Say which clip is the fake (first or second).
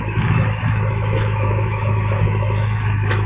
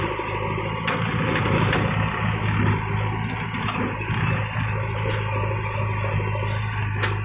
first